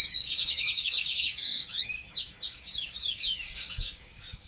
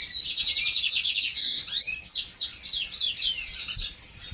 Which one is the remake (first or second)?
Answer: first